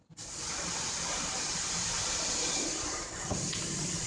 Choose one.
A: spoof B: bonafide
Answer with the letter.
A